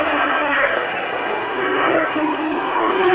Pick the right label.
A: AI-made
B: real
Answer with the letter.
A